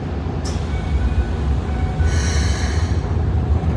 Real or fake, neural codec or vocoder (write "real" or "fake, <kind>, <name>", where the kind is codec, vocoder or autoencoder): real